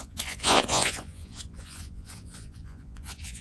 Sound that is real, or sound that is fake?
fake